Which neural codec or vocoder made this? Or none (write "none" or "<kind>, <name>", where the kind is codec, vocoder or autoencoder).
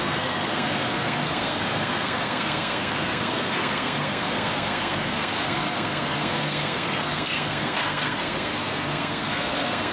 codec, SNAC